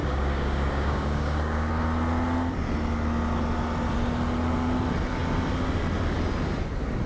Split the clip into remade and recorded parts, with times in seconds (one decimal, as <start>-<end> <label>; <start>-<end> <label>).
0.0-1.7 remade; 1.7-7.1 recorded